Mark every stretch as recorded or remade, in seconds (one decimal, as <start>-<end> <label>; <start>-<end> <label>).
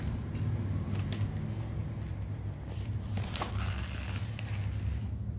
0.0-1.8 recorded; 1.8-3.7 remade; 3.7-5.4 recorded